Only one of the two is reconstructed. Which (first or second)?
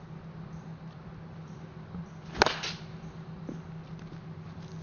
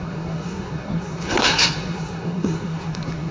second